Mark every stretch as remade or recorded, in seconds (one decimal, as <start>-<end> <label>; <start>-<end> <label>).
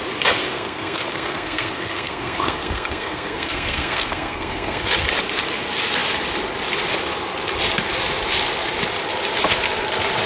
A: 0.0-0.5 recorded; 0.5-5.0 remade; 5.0-10.3 recorded